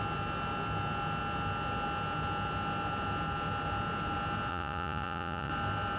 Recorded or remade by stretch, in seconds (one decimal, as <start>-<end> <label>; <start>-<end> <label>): 0.0-4.5 recorded; 4.5-5.5 remade; 5.5-6.0 recorded